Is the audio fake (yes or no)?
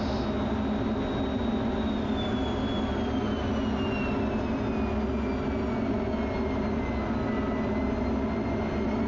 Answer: no